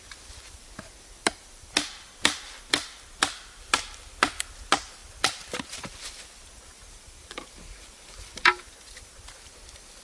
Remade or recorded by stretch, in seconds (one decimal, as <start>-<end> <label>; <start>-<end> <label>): 0.0-6.7 recorded; 6.7-8.7 remade; 8.7-10.0 recorded